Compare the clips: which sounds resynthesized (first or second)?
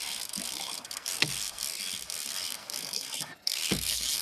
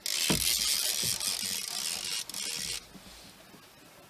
first